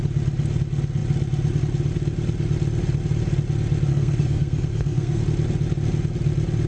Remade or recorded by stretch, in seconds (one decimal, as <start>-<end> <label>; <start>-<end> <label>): 0.0-3.9 recorded; 3.9-5.2 remade; 5.2-6.7 recorded